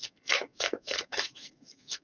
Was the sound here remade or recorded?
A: remade